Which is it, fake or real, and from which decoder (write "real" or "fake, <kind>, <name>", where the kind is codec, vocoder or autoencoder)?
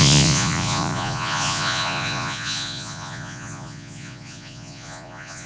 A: fake, vocoder, Vocos